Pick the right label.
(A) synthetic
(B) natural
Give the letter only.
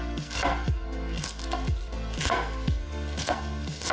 A